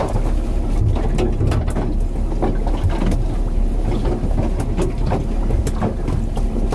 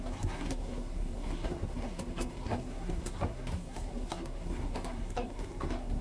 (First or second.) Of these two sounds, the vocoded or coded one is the second